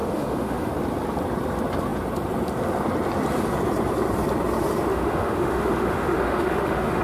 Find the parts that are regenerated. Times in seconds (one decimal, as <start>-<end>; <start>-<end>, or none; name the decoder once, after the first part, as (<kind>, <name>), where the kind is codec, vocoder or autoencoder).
0.0-0.7 (autoencoder, DAC-VAE); 4.9-7.0